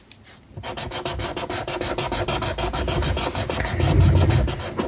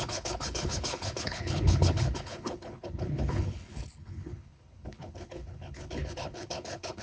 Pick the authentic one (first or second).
first